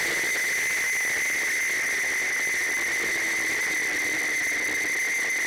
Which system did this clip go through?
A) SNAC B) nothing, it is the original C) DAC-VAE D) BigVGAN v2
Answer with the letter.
B